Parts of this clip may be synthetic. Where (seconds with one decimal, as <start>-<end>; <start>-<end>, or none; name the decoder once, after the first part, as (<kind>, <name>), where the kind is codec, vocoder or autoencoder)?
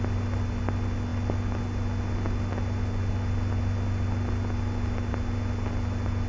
none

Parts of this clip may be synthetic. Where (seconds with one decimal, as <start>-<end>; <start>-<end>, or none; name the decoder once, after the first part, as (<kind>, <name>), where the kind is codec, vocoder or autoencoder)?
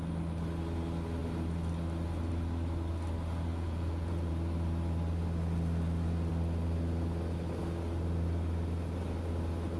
3.5-4.3 (vocoder, Vocos)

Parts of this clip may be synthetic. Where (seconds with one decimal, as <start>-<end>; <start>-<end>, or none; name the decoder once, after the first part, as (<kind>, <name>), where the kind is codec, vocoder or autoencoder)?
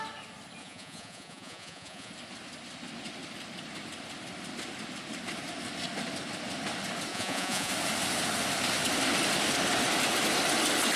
0.6-2.1 (vocoder, Vocos); 7.1-7.7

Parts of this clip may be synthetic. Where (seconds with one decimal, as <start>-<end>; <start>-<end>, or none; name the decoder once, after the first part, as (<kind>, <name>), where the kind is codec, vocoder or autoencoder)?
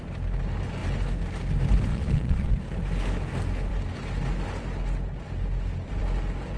1.9-2.5 (vocoder, Vocos)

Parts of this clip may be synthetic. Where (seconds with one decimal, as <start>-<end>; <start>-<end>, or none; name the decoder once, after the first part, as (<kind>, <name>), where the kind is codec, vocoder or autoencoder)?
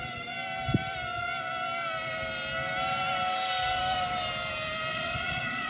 4.9-5.7 (vocoder, Vocos)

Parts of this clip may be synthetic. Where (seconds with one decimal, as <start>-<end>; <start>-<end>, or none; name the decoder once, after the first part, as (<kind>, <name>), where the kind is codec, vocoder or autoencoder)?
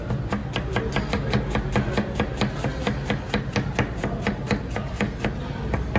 none